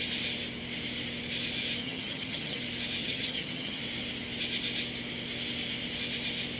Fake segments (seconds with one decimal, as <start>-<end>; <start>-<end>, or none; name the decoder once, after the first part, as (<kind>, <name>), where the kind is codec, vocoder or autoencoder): 1.8-2.6 (vocoder, HiFi-GAN); 3.0-3.8

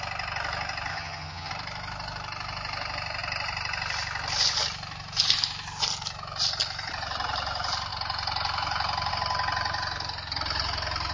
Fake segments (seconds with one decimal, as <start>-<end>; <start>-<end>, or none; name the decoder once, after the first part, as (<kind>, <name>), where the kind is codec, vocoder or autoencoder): 0.9-1.5 (vocoder, HiFi-GAN)

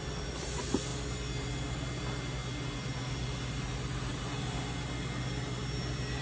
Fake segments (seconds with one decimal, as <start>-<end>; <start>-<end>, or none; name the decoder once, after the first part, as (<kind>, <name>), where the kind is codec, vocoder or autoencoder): none

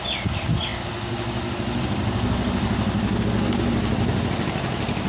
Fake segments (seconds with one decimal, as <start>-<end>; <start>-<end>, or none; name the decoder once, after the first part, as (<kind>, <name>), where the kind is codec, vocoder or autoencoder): none

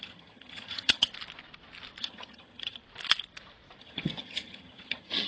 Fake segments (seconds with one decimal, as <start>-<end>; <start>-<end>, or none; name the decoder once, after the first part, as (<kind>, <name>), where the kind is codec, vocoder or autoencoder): 0.0-1.1 (vocoder, HiFi-GAN); 2.0-2.8; 3.8-5.3

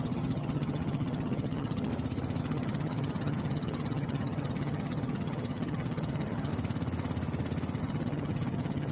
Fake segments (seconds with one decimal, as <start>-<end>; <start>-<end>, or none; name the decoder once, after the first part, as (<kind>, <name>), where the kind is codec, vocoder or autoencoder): 0.0-1.9 (vocoder, HiFi-GAN); 2.4-6.5; 7.8-8.9

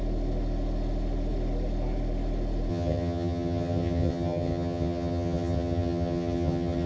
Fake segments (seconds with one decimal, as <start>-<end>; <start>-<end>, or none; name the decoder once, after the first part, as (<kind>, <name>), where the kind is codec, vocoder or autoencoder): 2.7-6.9 (vocoder, HiFi-GAN)